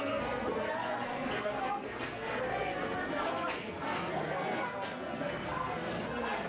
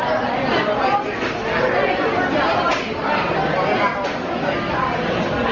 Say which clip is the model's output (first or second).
first